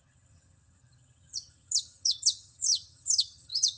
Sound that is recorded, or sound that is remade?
remade